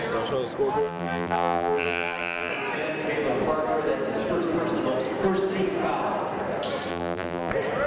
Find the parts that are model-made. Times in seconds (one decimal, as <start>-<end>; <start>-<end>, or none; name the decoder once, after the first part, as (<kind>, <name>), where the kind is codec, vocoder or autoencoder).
0.8-2.5 (vocoder, BigVGAN v2); 6.9-7.5